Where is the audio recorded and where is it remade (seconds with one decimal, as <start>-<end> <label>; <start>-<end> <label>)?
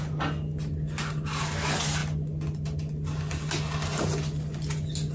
0.0-5.1 recorded